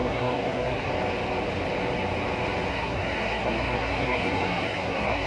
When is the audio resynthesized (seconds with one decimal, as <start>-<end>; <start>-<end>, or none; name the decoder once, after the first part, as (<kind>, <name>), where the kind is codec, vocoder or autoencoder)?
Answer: 0.0-0.9 (codec, SNAC); 2.7-5.3